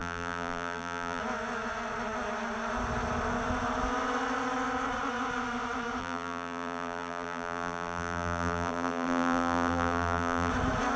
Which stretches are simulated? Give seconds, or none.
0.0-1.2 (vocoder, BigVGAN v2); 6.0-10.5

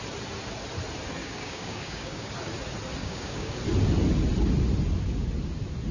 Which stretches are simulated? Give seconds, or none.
1.2-2.3 (codec, DAC); 3.0-3.6

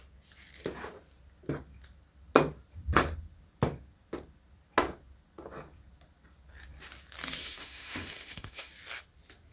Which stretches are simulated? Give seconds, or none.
7.4-8.7 (autoencoder, DAC-VAE)

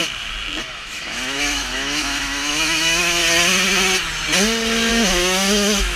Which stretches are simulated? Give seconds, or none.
0.7-3.2 (autoencoder, DAC-VAE); 4.9-6.0

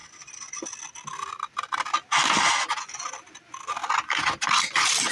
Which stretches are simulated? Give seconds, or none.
none

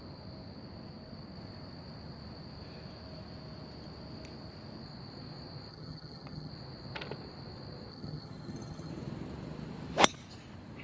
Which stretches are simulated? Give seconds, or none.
5.7-6.5 (vocoder, HiFi-GAN); 7.9-8.9

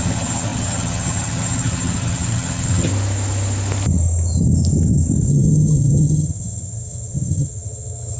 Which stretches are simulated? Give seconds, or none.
0.0-2.9 (vocoder, HiFi-GAN); 5.3-8.2

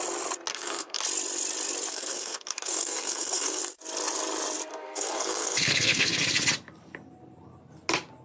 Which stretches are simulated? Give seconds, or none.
0.5-1.0 (codec, SNAC); 1.9-3.6; 4.7-6.2